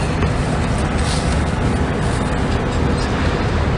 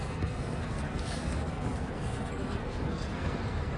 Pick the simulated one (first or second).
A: second